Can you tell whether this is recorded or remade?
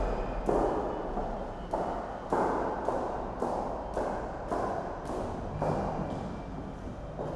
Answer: recorded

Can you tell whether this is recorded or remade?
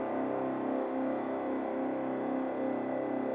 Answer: recorded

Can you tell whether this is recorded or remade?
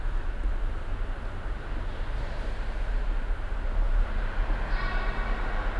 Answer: recorded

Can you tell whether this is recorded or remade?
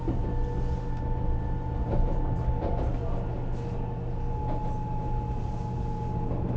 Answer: recorded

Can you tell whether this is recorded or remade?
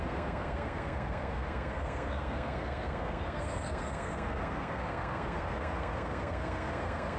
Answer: remade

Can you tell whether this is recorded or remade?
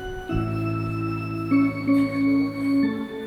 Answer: recorded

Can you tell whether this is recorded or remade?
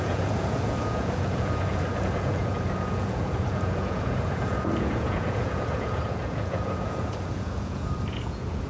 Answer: remade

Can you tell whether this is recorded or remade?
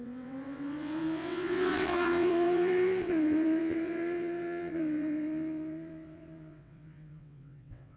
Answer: remade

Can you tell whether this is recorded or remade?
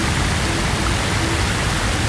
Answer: recorded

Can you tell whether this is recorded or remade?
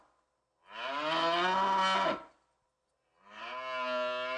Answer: recorded